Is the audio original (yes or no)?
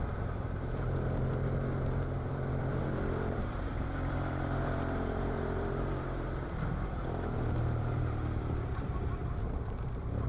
no